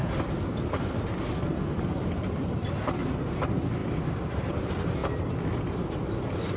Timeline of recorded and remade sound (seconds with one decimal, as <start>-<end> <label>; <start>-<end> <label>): 0.0-1.3 remade; 1.3-5.0 recorded; 5.0-5.6 remade; 5.6-6.6 recorded

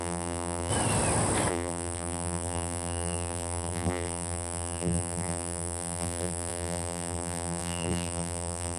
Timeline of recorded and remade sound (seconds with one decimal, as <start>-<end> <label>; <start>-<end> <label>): 0.0-0.7 remade; 0.7-1.5 recorded; 1.5-8.8 remade

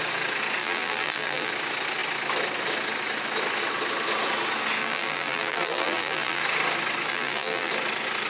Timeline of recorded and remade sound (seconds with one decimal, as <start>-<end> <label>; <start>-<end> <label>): 0.0-0.6 recorded; 0.6-1.5 remade; 1.5-4.8 recorded; 4.8-6.4 remade; 6.4-7.1 recorded; 7.1-7.7 remade; 7.7-8.3 recorded